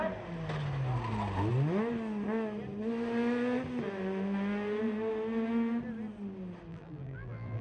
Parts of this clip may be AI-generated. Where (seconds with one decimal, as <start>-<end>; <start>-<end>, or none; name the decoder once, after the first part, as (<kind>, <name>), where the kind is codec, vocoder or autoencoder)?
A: 6.7-7.6 (vocoder, BigVGAN v2)